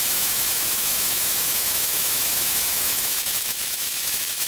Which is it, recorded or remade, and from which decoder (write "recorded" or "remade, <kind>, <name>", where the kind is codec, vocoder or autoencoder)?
remade, autoencoder, DAC-VAE